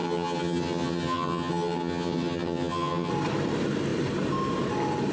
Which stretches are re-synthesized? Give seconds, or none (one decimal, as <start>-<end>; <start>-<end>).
0.0-3.1